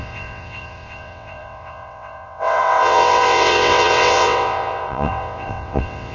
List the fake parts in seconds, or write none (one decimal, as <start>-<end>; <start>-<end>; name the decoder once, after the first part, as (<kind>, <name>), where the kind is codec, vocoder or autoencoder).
0.0-6.1 (vocoder, WaveNeXt)

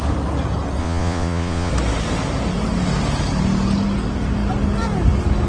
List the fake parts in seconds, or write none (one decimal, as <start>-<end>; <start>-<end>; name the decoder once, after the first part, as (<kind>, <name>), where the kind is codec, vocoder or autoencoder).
0.8-1.7 (vocoder, Vocos)

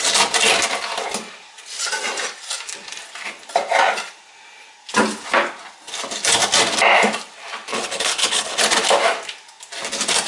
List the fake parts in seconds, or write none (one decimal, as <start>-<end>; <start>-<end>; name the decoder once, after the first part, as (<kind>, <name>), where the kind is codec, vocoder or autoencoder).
7.7-8.6 (codec, HILCodec)

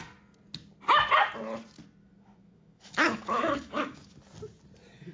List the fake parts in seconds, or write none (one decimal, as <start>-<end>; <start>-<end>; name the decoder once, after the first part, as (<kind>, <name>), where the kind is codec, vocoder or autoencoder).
2.0-4.2 (autoencoder, DAC-VAE)

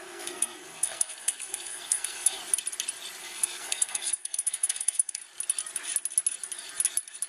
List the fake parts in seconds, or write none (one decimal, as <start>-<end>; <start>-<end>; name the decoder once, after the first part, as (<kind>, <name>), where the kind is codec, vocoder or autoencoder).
0.0-2.4 (codec, SNAC); 3.2-5.2